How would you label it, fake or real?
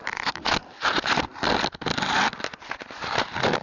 real